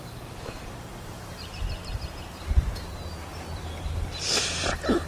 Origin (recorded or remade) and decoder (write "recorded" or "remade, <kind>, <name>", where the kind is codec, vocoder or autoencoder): remade, vocoder, BigVGAN v2